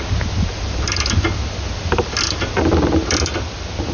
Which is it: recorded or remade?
recorded